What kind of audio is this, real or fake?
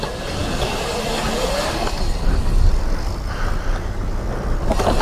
real